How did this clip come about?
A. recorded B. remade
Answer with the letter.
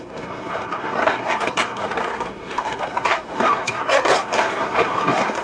B